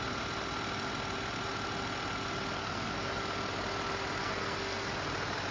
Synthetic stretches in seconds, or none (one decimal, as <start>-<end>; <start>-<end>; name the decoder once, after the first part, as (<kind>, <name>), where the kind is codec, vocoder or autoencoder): 2.6-3.2 (codec, SNAC); 4.2-4.9